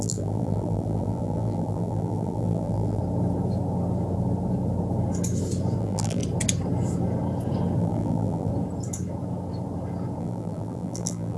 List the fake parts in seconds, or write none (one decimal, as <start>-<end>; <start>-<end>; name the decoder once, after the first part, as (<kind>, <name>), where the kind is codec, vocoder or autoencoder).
0.0-3.0 (vocoder, BigVGAN v2); 5.8-6.2; 7.8-8.5; 10.2-11.4